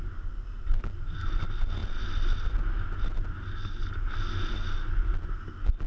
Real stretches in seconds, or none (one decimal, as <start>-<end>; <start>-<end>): 0.0-5.9